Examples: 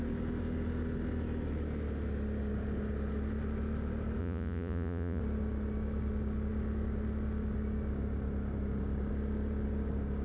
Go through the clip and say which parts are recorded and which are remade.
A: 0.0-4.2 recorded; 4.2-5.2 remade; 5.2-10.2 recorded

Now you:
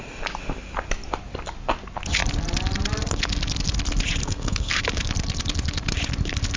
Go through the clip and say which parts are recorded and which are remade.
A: 0.0-4.2 recorded; 4.2-4.8 remade; 4.8-6.6 recorded